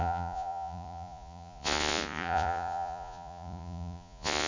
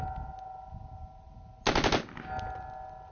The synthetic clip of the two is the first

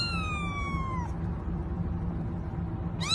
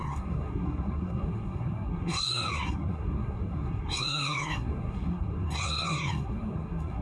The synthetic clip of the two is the second